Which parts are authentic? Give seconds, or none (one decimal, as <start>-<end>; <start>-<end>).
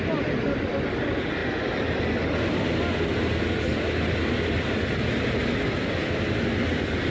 0.0-7.1